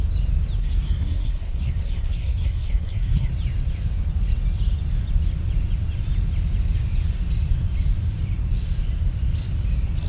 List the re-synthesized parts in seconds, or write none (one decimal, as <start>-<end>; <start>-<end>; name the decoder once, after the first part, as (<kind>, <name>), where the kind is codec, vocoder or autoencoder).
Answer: 0.6-3.3 (codec, SNAC)